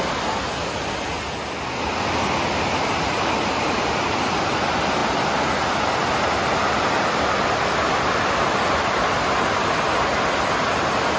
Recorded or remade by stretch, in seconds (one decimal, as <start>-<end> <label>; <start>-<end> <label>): 0.0-11.2 recorded